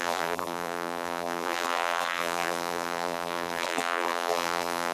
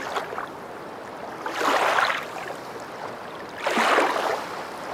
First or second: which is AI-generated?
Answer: first